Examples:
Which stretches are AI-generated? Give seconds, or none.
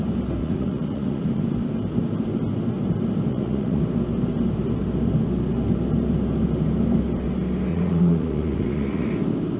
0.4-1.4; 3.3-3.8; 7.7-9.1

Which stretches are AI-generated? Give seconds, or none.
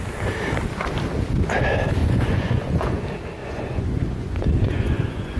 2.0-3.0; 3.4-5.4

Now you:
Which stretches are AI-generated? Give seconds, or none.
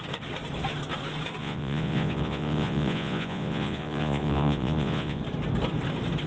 1.4-5.2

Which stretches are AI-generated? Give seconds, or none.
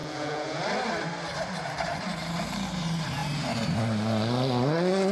0.0-0.6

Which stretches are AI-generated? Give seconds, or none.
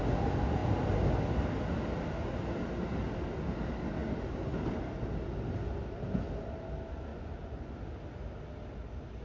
7.1-7.7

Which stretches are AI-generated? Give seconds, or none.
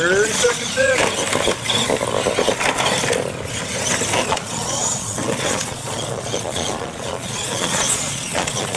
0.0-1.0; 4.3-8.8